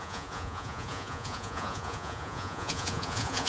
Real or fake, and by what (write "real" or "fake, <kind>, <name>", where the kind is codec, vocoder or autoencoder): fake, vocoder, Vocos